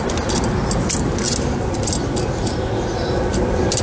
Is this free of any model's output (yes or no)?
yes